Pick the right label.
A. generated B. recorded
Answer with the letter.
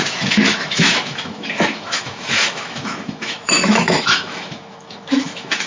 A